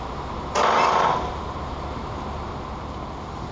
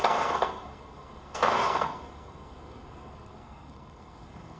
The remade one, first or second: second